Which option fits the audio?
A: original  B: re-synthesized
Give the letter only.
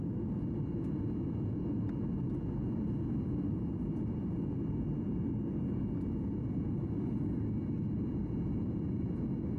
A